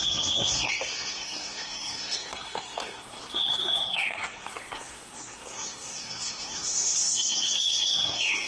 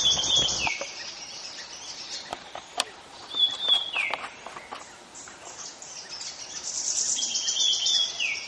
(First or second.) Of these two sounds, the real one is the second